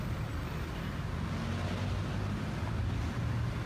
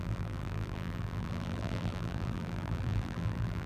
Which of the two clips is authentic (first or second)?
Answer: first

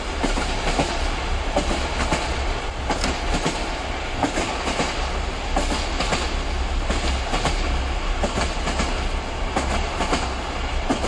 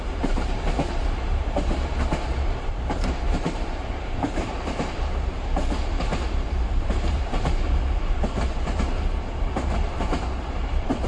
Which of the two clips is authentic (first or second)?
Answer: first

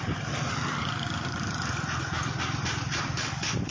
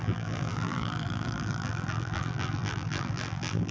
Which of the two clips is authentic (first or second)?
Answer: first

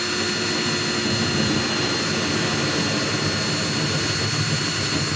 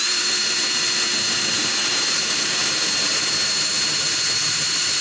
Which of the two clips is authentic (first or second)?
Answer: first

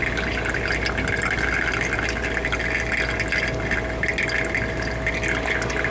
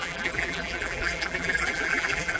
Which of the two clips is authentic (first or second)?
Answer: first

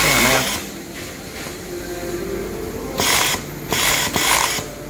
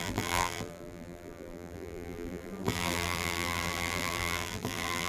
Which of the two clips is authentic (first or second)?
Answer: first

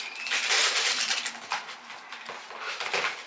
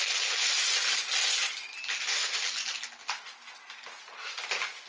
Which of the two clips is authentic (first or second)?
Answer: second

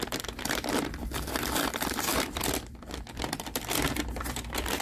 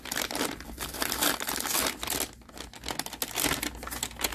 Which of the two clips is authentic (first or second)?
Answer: second